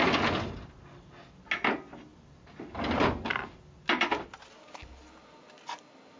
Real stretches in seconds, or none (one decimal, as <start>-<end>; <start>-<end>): 0.0-6.2